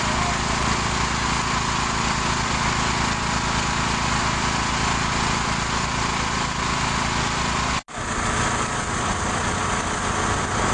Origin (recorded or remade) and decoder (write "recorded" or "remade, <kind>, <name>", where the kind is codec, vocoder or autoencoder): recorded